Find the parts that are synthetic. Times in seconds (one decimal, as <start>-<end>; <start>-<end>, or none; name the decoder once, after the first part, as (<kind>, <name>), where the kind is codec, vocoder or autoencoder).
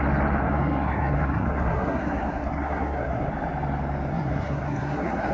0.4-3.3 (codec, SNAC); 4.1-5.3